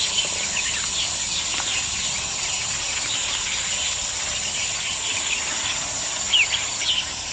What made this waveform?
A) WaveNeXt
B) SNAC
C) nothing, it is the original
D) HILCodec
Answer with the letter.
C